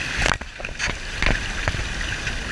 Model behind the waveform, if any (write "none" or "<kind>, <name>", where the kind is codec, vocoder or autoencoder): none